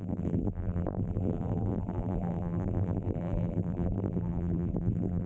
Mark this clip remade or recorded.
remade